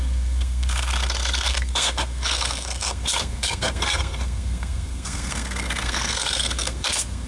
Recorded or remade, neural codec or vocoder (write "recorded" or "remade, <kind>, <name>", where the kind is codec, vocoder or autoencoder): remade, codec, SNAC